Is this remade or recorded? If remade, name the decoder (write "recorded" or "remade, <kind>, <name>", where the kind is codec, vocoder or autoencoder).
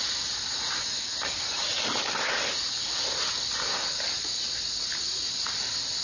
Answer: recorded